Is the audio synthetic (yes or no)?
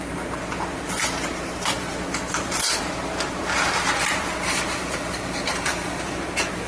yes